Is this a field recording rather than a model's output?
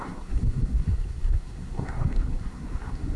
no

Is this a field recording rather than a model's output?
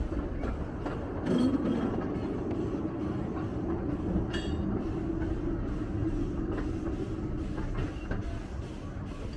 yes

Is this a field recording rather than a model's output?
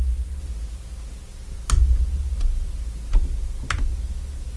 yes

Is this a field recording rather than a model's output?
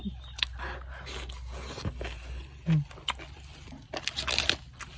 yes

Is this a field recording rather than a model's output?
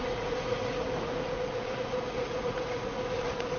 no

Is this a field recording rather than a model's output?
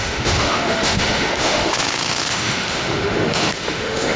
no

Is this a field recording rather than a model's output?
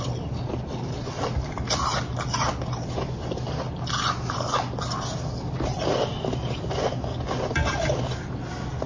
yes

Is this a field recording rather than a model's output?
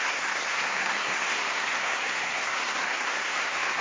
no